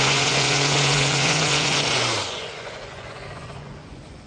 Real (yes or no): no